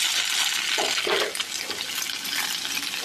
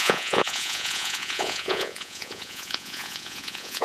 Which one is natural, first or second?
first